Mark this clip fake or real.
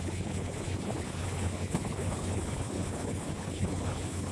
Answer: fake